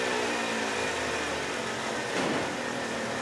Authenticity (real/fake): real